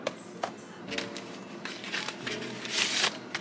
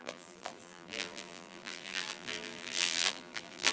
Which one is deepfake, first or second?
second